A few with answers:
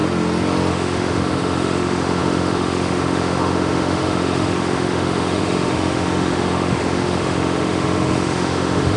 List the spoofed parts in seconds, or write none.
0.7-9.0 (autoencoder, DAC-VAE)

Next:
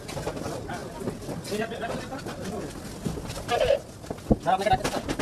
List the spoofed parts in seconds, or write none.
none

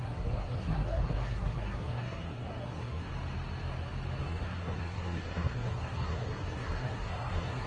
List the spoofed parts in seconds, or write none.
0.0-3.1 (codec, SNAC); 4.2-7.7

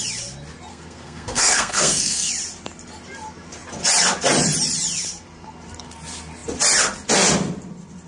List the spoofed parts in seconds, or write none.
0.7-2.3 (codec, SNAC)

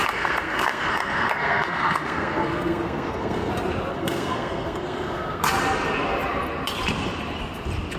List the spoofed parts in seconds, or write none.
0.0-3.5 (codec, SNAC); 3.9-5.4

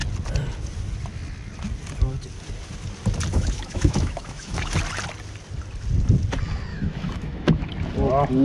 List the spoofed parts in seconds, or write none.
3.3-4.8 (autoencoder, DAC-VAE); 6.7-7.7